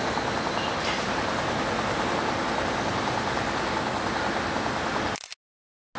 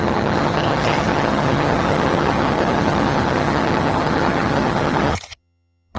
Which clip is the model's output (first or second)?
second